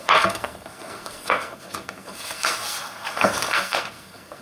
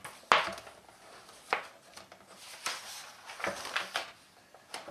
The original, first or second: second